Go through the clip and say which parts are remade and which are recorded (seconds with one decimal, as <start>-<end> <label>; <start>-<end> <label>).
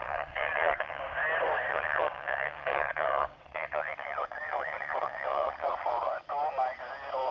0.0-1.0 remade; 1.0-1.7 recorded; 1.7-6.1 remade; 6.1-7.3 recorded